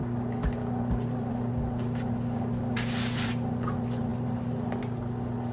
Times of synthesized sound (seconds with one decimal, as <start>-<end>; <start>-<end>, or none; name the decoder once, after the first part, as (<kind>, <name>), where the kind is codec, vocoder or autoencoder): none